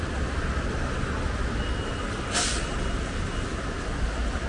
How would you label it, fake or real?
real